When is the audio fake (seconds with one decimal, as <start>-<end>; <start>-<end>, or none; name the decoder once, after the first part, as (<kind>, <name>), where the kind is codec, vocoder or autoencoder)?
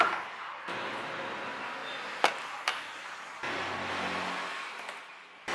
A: none